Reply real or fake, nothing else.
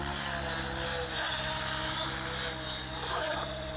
real